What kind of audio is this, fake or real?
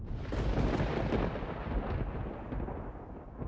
real